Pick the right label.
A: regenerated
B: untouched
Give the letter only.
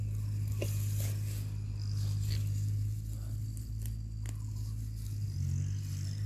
B